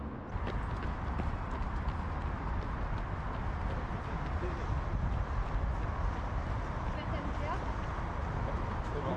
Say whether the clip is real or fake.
real